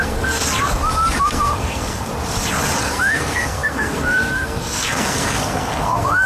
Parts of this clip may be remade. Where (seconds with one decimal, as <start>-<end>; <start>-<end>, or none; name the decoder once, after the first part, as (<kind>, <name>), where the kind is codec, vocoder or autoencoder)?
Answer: 0.0-0.4 (codec, SNAC); 1.2-2.1; 2.8-6.3